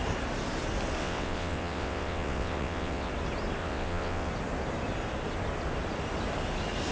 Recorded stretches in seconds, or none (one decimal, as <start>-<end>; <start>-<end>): 0.0-1.0; 3.1-3.6; 4.3-6.9